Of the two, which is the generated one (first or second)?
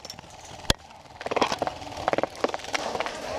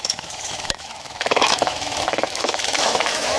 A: second